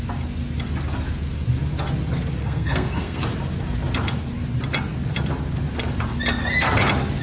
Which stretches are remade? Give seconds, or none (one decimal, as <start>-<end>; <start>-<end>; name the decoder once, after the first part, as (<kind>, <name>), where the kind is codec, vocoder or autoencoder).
2.4-3.2 (codec, SNAC)